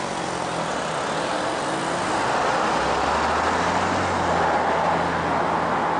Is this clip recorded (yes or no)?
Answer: yes